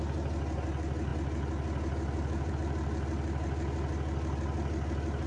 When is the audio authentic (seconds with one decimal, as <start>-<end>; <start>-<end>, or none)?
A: 0.0-5.3